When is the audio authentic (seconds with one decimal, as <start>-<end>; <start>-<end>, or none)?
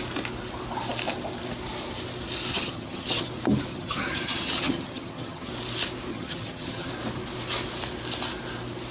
0.0-2.5; 3.3-3.7; 5.5-6.1; 6.9-8.9